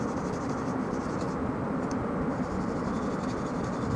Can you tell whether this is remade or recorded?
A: remade